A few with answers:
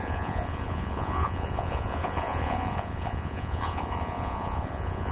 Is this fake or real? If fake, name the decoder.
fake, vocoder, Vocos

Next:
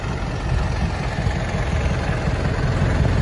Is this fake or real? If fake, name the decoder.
real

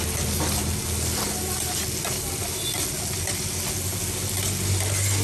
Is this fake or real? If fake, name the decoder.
real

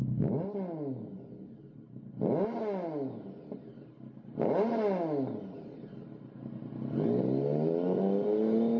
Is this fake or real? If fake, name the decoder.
real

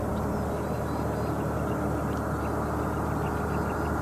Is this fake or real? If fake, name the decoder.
real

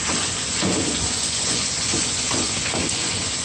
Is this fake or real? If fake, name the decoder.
fake, vocoder, Vocos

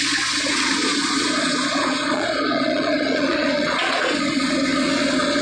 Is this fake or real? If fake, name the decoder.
fake, vocoder, Vocos